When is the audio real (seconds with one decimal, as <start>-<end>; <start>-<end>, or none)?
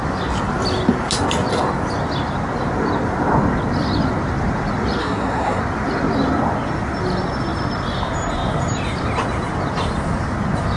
0.0-5.0; 5.6-10.8